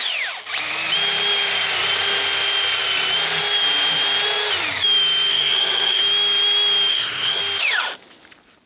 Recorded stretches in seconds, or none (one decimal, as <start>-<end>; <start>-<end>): 0.0-5.3; 6.0-6.9; 7.4-8.7